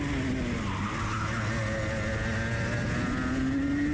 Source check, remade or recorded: recorded